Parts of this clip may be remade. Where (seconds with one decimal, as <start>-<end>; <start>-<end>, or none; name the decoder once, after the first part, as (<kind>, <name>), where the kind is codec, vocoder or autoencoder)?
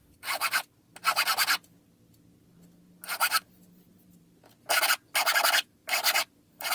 5.8-6.7 (vocoder, BigVGAN v2)